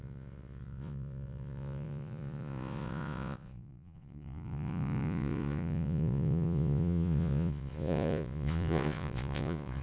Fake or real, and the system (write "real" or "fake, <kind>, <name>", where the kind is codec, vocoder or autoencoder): fake, vocoder, Vocos